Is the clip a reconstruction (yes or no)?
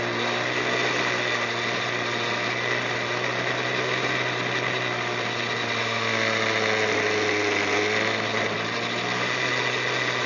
no